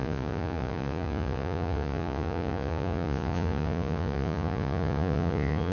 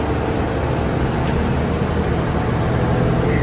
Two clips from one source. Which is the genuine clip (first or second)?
second